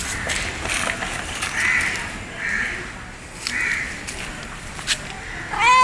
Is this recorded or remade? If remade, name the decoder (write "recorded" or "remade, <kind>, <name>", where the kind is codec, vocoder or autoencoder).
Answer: recorded